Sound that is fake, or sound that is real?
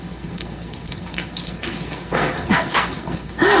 fake